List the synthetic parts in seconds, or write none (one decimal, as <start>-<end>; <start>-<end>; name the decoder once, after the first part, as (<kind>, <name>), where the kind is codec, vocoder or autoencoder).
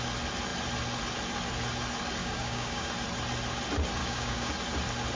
2.2-2.9 (codec, DAC); 4.0-4.5